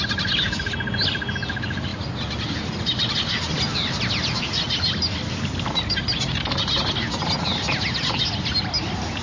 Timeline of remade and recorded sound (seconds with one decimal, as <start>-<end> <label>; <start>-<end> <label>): 0.0-1.9 recorded; 1.9-6.2 remade; 6.2-9.2 recorded